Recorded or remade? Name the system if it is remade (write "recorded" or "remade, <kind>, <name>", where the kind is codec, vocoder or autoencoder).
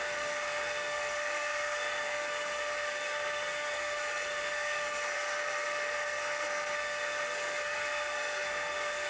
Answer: remade, codec, SNAC